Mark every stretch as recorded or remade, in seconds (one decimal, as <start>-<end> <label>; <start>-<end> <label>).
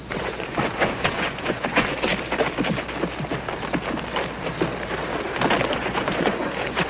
0.0-2.1 remade; 2.1-5.8 recorded; 5.8-6.9 remade